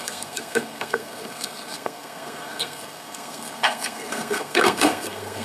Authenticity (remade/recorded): remade